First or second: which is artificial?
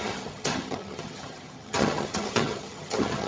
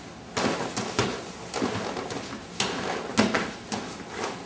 first